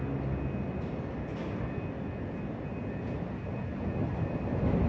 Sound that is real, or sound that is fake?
real